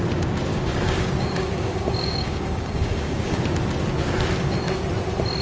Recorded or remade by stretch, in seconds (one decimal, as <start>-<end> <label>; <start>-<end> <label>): 0.0-0.5 recorded; 0.5-3.4 remade; 3.4-5.4 recorded